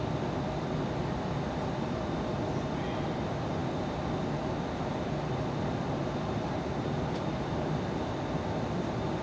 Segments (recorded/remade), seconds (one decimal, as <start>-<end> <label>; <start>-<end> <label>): 0.0-9.2 recorded